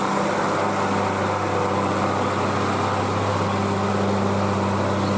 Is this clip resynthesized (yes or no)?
no